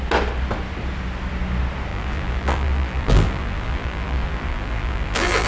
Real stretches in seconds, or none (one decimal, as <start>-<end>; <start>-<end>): 0.0-1.9